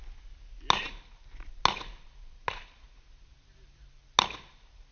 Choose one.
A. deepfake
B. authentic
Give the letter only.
B